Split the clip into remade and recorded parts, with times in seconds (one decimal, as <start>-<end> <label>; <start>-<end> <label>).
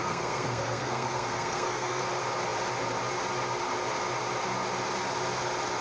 0.0-2.0 remade; 2.0-5.8 recorded